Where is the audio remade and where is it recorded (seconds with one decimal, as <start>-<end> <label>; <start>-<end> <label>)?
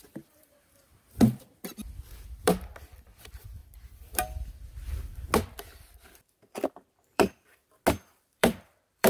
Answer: 0.0-0.9 remade; 0.9-1.5 recorded; 1.5-3.6 remade; 3.6-6.7 recorded; 6.7-7.6 remade; 7.6-8.2 recorded; 8.2-9.1 remade